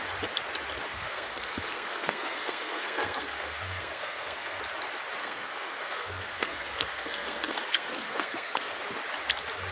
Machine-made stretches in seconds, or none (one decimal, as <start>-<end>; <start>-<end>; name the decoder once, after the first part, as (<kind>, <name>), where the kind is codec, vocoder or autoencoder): 0.9-4.6 (codec, SNAC); 5.2-8.8